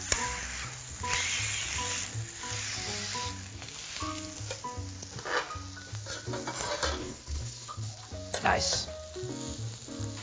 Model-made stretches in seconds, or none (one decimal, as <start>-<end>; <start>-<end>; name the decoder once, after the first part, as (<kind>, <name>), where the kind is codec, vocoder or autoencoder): 7.0-8.0 (codec, HILCodec)